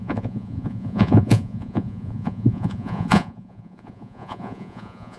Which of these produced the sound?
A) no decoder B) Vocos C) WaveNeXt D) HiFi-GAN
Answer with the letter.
B